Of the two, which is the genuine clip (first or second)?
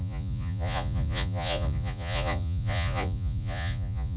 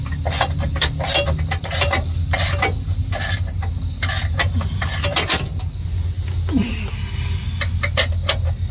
second